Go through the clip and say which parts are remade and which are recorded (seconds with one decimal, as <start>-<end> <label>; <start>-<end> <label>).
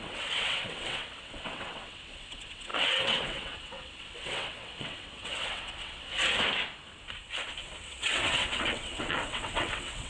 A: 0.0-6.1 remade; 6.1-7.8 recorded; 7.8-10.1 remade